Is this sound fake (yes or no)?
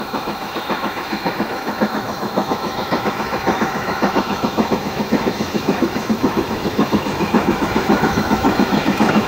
yes